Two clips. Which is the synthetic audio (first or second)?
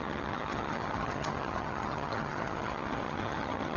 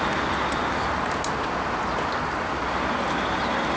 first